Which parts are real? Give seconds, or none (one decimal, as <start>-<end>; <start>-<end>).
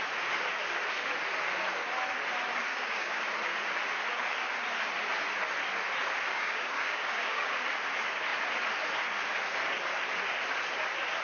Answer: 0.0-2.7; 3.2-6.3; 7.6-11.2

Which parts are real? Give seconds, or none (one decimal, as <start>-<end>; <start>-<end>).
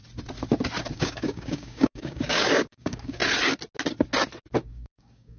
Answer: 0.0-0.9; 3.2-4.7